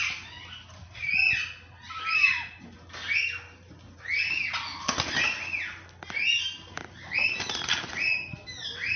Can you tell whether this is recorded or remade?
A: recorded